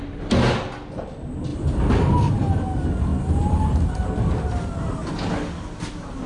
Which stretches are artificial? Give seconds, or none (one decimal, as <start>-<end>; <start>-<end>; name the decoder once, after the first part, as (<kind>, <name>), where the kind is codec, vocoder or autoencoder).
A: none